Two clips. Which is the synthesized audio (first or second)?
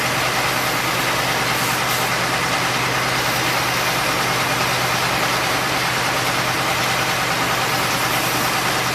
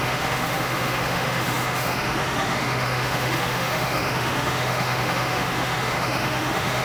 second